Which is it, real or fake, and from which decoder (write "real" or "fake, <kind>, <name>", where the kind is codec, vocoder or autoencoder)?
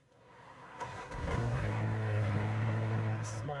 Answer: fake, codec, SNAC